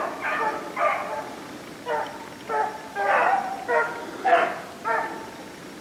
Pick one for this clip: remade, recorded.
recorded